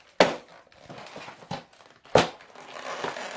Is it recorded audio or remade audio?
recorded